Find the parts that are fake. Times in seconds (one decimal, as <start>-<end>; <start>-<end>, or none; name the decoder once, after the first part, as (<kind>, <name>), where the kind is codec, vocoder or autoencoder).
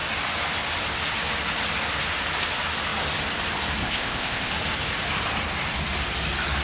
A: 3.8-4.5 (codec, ZipCodec)